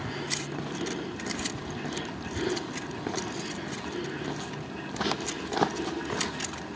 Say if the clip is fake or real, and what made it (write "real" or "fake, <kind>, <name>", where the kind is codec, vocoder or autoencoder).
real